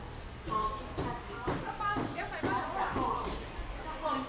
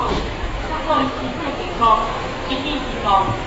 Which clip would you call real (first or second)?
first